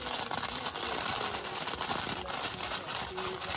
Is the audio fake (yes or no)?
no